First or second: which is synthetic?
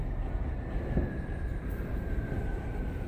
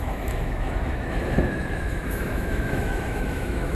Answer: second